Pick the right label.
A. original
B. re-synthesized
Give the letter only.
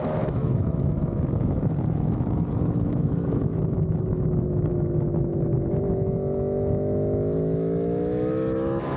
B